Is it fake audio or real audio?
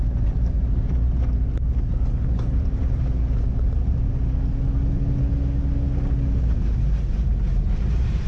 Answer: real